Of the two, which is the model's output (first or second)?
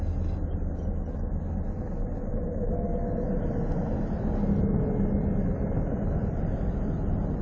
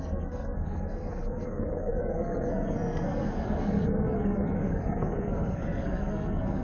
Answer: second